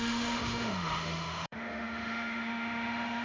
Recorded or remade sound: remade